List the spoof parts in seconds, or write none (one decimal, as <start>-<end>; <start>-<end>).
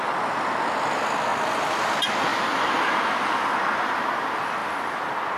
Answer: 1.3-1.8; 2.3-4.1; 4.6-5.4